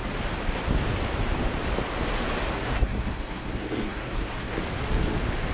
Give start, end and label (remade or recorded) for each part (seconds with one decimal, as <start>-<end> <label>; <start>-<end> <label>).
0.0-2.5 recorded; 2.5-4.6 remade; 4.6-5.5 recorded